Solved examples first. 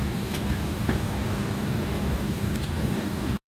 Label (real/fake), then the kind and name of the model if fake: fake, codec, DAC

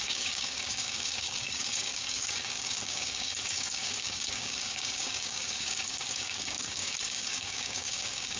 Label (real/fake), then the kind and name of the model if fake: fake, codec, DAC